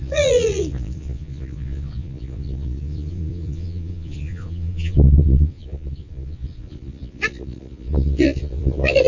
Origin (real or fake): fake